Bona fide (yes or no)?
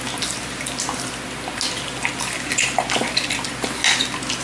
yes